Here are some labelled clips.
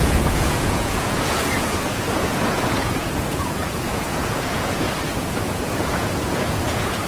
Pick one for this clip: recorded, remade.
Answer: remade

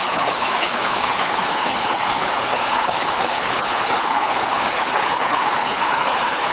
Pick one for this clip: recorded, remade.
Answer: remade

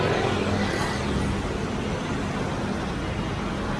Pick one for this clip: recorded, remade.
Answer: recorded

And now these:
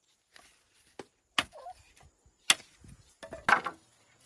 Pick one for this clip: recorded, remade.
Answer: recorded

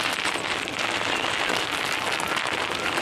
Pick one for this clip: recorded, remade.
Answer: recorded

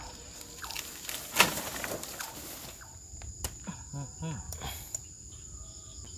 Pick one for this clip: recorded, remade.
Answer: recorded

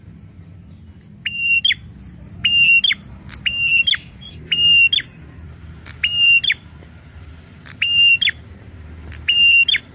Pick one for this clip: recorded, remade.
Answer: recorded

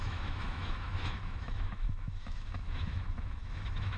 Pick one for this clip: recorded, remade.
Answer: remade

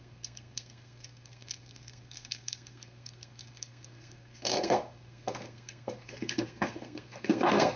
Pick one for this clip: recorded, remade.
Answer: remade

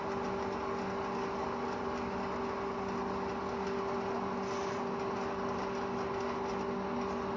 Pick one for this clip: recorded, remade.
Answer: recorded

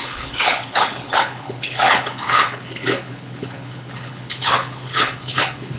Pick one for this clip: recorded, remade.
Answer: remade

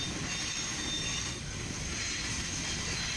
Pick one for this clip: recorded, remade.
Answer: recorded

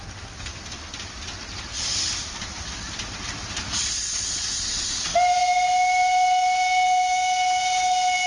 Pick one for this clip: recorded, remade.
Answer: recorded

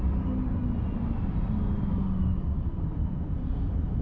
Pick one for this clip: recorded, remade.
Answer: recorded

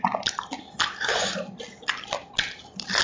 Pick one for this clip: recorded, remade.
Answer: recorded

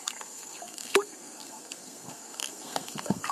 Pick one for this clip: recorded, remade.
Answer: remade